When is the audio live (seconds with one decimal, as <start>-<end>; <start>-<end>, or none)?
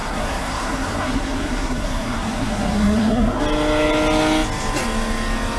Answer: 3.4-5.6